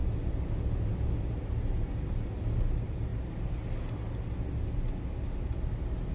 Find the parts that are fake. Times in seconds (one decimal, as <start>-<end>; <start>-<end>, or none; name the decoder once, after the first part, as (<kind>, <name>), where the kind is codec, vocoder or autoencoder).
none

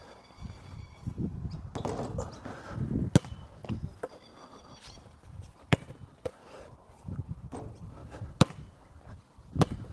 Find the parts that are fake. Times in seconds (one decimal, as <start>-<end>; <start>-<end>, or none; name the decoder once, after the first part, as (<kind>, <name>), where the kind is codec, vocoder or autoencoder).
4.3-7.6 (vocoder, BigVGAN v2)

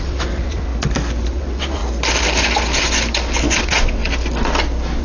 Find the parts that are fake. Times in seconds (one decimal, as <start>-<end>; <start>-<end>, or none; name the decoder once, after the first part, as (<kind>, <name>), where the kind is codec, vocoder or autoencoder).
0.0-0.7 (vocoder, WaveNeXt); 1.3-1.8; 3.6-4.0

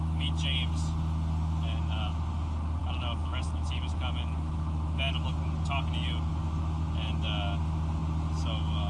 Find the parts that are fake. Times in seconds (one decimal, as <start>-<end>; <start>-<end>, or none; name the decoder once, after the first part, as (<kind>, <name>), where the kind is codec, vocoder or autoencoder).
none

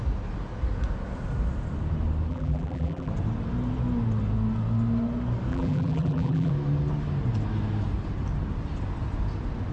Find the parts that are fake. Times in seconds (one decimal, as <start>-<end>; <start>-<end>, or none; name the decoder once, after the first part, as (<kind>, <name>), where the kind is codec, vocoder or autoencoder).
2.3-3.1 (vocoder, BigVGAN v2); 5.5-6.5

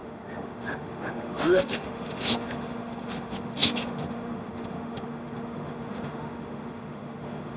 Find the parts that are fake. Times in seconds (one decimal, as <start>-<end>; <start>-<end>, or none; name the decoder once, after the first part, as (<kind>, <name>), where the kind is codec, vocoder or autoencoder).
0.0-7.6 (autoencoder, DAC-VAE)

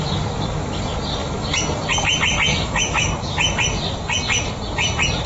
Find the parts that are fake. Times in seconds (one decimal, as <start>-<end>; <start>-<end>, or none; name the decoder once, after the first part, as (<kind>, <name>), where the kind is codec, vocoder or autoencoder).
2.5-3.1 (autoencoder, DAC-VAE)

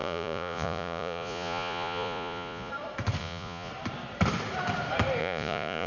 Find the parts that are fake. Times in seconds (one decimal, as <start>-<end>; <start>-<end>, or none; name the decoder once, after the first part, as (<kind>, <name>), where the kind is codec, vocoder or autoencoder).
0.0-2.7 (vocoder, Vocos); 3.2-3.7; 5.2-5.9